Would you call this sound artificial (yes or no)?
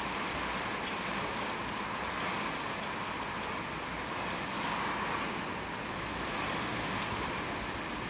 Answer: no